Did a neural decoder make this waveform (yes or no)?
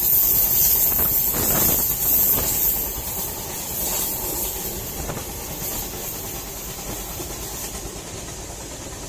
no